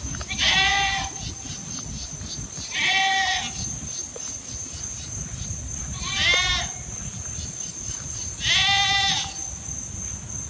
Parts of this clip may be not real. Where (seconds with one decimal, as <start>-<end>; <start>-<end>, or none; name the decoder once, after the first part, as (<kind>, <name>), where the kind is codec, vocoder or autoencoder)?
none